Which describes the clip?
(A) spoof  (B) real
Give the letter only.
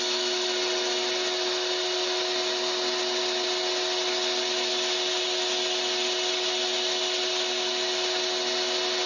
B